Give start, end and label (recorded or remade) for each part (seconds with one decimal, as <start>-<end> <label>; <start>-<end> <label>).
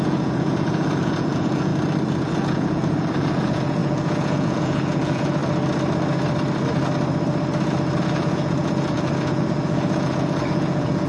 0.0-1.7 remade; 1.7-2.3 recorded; 2.3-5.4 remade; 5.4-8.0 recorded; 8.0-11.1 remade